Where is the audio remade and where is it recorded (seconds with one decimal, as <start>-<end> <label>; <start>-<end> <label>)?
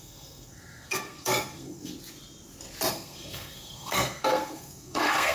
0.0-1.9 remade; 1.9-2.9 recorded; 2.9-5.3 remade